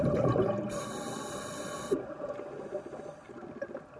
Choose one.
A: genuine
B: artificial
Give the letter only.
A